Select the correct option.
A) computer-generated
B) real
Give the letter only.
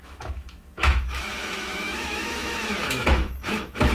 A